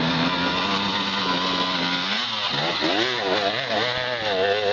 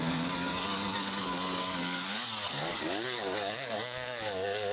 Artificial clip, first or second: second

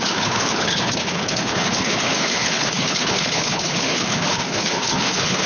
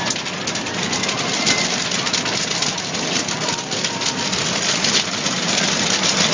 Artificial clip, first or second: first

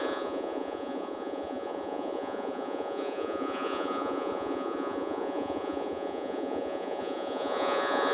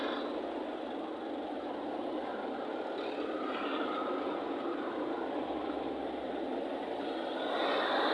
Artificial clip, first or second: first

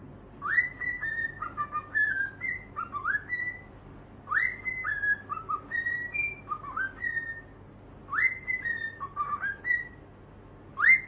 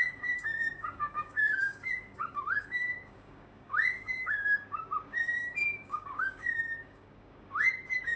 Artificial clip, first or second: second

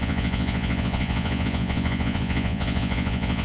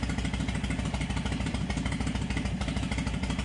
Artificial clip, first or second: first